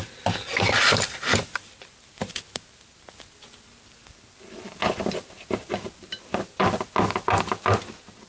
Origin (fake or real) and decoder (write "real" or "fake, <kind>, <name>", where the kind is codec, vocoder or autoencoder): real